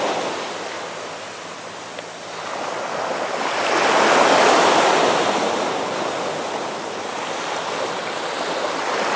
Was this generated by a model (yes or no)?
no